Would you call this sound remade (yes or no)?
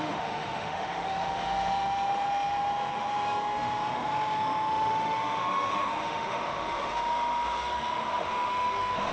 yes